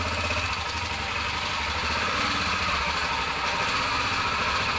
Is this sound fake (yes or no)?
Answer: no